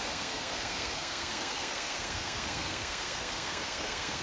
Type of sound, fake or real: fake